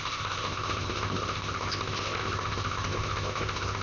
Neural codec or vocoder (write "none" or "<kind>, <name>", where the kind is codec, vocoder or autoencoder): codec, ZipCodec